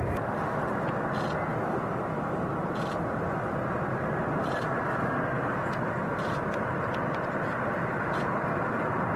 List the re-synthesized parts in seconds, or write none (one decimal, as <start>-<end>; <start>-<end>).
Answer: 1.5-2.1